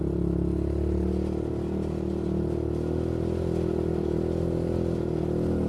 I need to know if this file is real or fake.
real